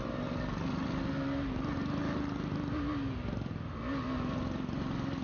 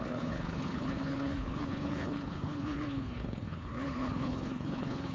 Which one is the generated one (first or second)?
second